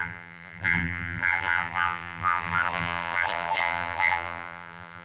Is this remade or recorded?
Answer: remade